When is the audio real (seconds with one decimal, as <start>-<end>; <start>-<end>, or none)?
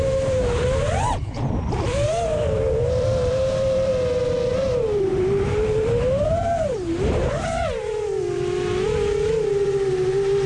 3.9-4.5